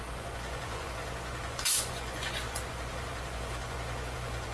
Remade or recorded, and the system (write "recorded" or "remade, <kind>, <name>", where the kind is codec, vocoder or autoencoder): remade, vocoder, Vocos